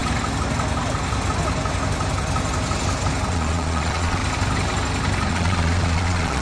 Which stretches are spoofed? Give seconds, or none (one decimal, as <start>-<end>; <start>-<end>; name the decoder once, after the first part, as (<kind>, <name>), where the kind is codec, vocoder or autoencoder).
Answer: 3.3-4.2 (vocoder, Vocos); 5.3-6.4